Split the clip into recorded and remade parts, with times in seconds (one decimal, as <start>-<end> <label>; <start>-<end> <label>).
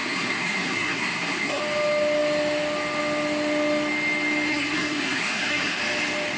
0.0-1.6 remade; 1.6-4.5 recorded; 4.5-5.8 remade; 5.8-6.4 recorded